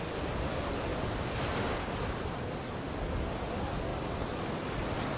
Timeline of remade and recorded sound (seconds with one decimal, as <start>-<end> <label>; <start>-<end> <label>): 0.0-0.9 recorded; 0.9-2.4 remade; 2.4-3.9 recorded; 3.9-4.4 remade; 4.4-5.2 recorded